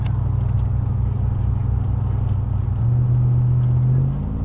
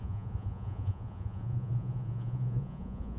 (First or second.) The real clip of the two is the first